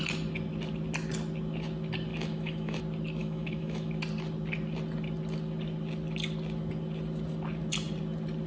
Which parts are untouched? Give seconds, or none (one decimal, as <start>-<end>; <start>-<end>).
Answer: 0.0-2.1; 2.8-3.2; 3.9-8.5